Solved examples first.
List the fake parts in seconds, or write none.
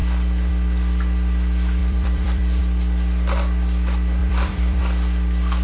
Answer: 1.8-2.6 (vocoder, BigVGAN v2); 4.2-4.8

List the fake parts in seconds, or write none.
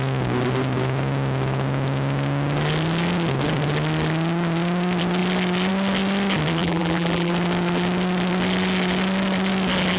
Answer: 6.6-7.3 (vocoder, BigVGAN v2)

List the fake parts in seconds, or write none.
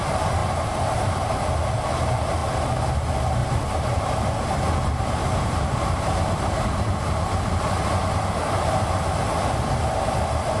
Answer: 0.4-1.5 (vocoder, BigVGAN v2); 3.4-7.6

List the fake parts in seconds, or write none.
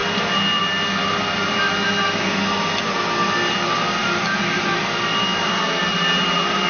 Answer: 4.0-4.8 (vocoder, BigVGAN v2); 5.8-6.7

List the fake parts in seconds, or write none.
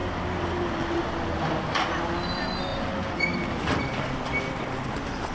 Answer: 0.0-1.0 (vocoder, BigVGAN v2); 2.7-3.8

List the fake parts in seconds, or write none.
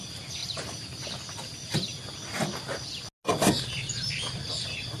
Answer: 0.4-1.1 (vocoder, BigVGAN v2)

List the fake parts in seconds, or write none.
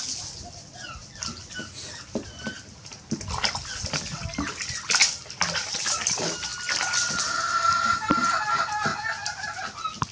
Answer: 8.9-9.6 (vocoder, BigVGAN v2)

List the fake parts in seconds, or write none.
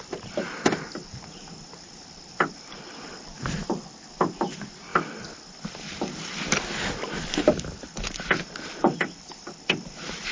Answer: 0.0-4.9 (vocoder, BigVGAN v2); 7.5-10.3